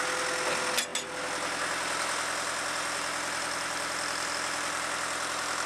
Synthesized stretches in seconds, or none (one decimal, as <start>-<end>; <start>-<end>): none